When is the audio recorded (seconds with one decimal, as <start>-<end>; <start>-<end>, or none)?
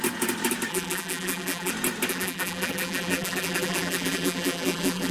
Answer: 0.0-0.7; 1.7-2.1